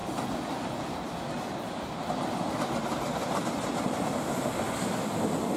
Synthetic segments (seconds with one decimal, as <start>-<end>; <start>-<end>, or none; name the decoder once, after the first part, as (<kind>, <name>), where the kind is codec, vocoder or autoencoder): none